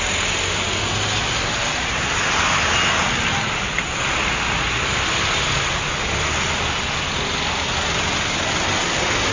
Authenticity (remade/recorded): recorded